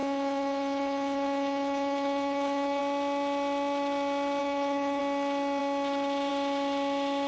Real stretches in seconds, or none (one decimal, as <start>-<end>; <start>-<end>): 2.8-4.4; 5.0-7.3